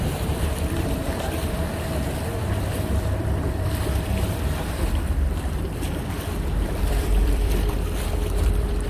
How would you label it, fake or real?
fake